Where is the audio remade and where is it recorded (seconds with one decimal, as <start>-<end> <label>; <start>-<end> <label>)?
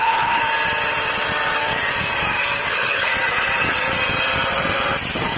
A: 0.0-0.4 remade; 0.4-2.7 recorded; 2.7-3.1 remade; 3.1-5.4 recorded